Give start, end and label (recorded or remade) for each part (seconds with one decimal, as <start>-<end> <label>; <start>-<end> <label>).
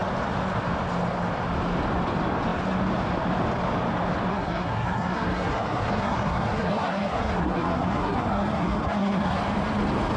0.0-4.3 recorded; 4.3-9.4 remade; 9.4-10.2 recorded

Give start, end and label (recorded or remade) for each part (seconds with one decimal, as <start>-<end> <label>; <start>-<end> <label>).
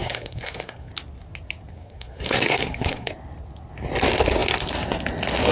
0.0-0.9 remade; 0.9-1.7 recorded; 1.7-3.1 remade; 3.1-5.5 recorded